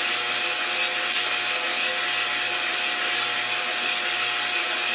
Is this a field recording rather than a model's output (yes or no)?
yes